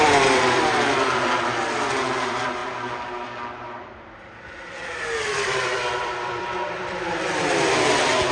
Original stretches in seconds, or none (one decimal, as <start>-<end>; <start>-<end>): 2.6-4.8